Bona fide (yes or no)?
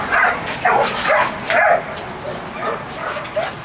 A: yes